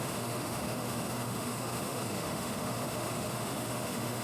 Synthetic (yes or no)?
yes